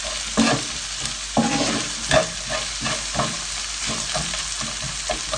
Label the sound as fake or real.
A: real